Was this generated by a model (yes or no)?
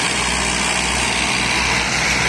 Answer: no